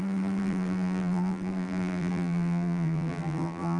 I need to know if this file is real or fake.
fake